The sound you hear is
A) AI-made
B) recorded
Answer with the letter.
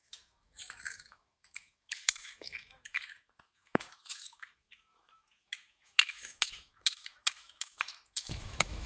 A